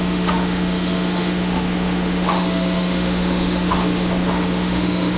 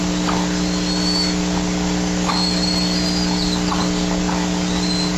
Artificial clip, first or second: first